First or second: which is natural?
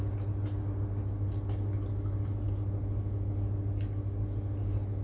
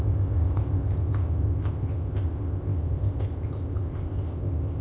first